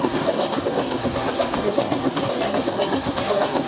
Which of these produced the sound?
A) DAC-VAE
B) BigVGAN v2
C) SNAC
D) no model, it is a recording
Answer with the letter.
C